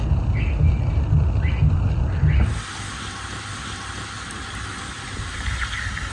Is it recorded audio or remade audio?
recorded